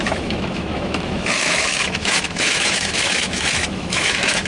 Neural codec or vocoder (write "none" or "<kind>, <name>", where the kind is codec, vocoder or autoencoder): autoencoder, DAC-VAE